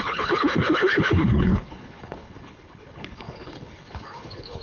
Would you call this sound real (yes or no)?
no